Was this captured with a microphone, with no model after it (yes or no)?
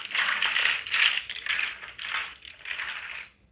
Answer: yes